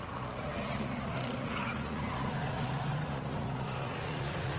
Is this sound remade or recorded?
remade